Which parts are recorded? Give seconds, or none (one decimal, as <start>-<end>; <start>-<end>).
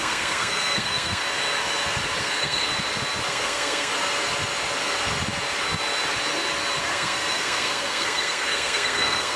1.2-2.2; 2.7-3.3; 3.9-6.8